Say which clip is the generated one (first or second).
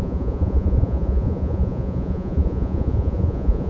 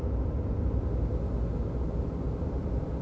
first